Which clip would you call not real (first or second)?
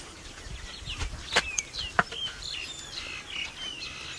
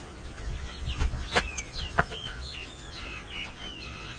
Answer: second